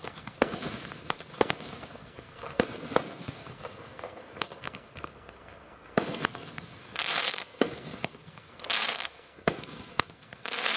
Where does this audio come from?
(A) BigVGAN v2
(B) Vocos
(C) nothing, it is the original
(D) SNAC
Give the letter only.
D